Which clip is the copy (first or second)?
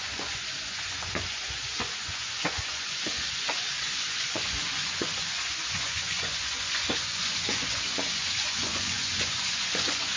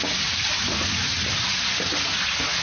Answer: first